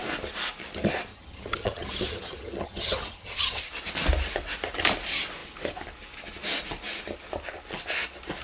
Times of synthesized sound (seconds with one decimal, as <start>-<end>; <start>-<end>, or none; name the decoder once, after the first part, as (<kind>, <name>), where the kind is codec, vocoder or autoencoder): 1.1-3.6 (vocoder, HiFi-GAN)